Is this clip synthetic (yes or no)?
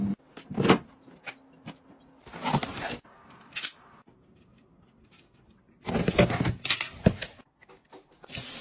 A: no